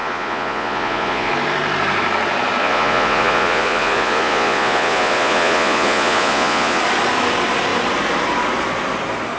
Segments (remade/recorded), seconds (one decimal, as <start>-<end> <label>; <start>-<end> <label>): 0.0-1.3 remade; 1.3-2.6 recorded; 2.6-6.8 remade; 6.8-9.4 recorded